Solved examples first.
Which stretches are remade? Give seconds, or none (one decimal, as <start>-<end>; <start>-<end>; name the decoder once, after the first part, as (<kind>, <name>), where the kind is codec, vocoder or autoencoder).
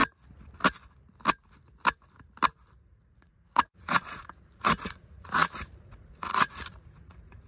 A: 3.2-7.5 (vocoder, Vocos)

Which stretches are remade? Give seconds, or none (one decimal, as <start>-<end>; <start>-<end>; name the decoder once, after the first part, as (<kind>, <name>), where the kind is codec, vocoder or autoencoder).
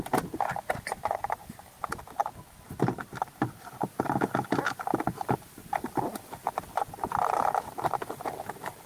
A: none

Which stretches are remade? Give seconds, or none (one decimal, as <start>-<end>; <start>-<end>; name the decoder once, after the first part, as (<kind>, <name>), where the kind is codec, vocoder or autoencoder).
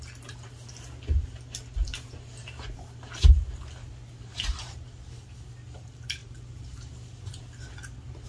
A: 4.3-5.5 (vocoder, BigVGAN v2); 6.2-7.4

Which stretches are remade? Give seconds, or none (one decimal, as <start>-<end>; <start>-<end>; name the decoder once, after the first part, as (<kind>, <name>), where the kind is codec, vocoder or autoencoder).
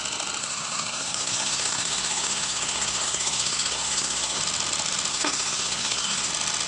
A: 0.4-4.4 (codec, SNAC); 5.1-6.3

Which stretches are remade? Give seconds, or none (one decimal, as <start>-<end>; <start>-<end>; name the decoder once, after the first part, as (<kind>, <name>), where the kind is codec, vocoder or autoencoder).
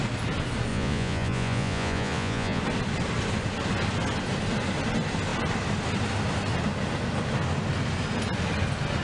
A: 0.7-2.6 (vocoder, Vocos)